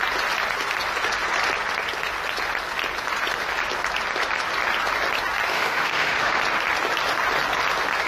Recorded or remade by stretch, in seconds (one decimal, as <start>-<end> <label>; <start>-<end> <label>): 0.0-5.5 recorded; 5.5-6.4 remade; 6.4-8.1 recorded